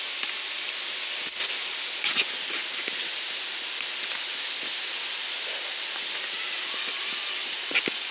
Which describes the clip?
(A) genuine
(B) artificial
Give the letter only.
A